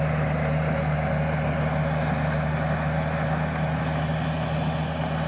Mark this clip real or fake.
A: real